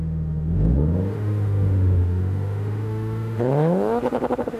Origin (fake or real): fake